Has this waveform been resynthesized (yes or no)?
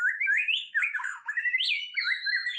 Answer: yes